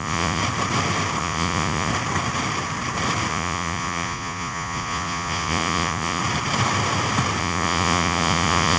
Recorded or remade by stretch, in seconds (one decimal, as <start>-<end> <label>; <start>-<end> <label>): 0.0-0.4 remade; 0.4-1.2 recorded; 1.2-1.9 remade; 1.9-3.3 recorded; 3.3-6.2 remade; 6.2-7.4 recorded; 7.4-8.8 remade

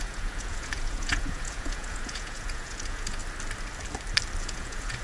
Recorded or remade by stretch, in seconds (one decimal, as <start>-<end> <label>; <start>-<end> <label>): 0.0-3.2 remade; 3.2-4.4 recorded; 4.4-5.0 remade

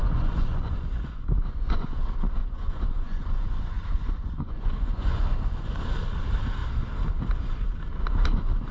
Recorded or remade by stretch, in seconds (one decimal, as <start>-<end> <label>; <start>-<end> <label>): 0.0-2.0 remade; 2.0-2.4 recorded; 2.4-5.8 remade; 5.8-8.7 recorded

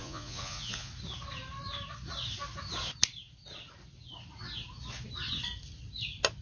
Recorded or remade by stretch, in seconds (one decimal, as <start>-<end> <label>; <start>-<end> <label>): 0.0-0.9 remade; 0.9-6.4 recorded